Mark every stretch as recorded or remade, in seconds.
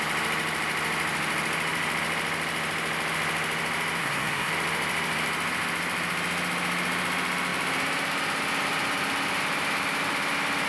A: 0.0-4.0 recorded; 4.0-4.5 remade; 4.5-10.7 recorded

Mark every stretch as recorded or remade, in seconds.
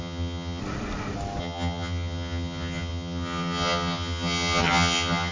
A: 0.0-0.6 remade; 0.6-1.4 recorded; 1.4-5.3 remade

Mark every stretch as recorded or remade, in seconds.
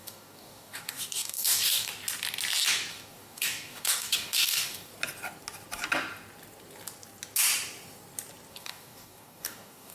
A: 0.0-1.9 remade; 1.9-2.9 recorded; 2.9-4.9 remade; 4.9-8.5 recorded; 8.5-9.9 remade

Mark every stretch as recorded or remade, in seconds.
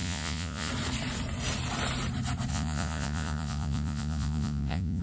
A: 0.0-0.7 remade; 0.7-2.5 recorded; 2.5-5.0 remade